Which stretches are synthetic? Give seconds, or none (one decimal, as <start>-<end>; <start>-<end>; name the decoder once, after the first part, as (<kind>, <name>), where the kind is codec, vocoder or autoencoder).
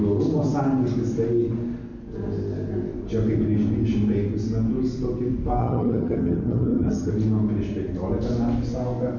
5.6-7.1 (vocoder, HiFi-GAN)